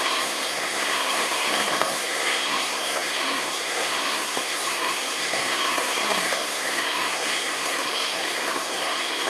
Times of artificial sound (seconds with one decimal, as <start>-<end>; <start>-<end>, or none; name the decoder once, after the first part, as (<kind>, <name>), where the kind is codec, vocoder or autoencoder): 0.0-9.3 (codec, SNAC)